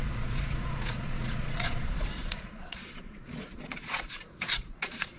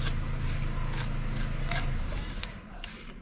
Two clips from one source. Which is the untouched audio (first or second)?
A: second